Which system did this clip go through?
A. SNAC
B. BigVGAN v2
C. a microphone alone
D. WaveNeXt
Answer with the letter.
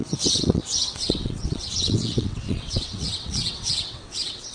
D